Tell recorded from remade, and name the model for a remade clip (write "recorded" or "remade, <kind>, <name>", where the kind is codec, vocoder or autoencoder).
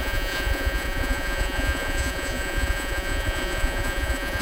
remade, vocoder, Vocos